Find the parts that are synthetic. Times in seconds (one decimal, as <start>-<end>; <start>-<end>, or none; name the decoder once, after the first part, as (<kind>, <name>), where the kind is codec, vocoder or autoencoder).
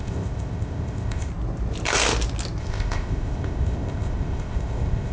0.0-1.3 (codec, ZipCodec); 2.6-5.1